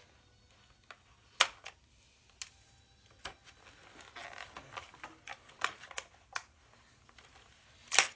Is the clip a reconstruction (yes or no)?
no